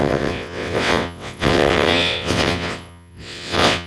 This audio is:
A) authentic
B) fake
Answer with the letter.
B